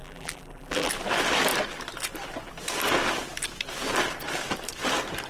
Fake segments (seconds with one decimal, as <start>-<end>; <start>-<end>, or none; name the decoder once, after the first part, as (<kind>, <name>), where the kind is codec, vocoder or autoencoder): 0.0-0.9 (vocoder, BigVGAN v2)